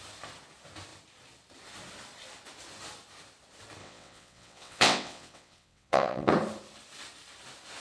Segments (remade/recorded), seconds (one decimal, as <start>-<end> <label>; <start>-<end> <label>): 0.0-3.8 recorded; 3.8-6.3 remade; 6.3-7.8 recorded